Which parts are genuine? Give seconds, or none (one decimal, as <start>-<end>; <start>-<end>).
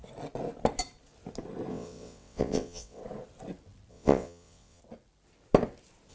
0.0-1.7; 3.0-3.9; 4.8-6.1